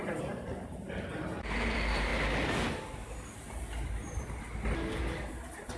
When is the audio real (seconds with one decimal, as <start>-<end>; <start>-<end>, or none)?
2.1-5.8